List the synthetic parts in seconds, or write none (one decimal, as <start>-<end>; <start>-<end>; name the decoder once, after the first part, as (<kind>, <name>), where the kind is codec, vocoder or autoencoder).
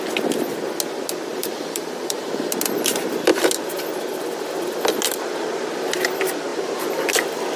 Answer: 1.3-3.7 (vocoder, BigVGAN v2); 6.5-7.1